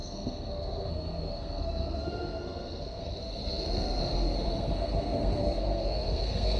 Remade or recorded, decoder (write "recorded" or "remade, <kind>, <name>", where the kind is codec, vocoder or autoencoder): remade, codec, SNAC